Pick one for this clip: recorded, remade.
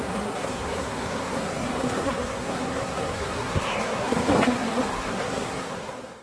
remade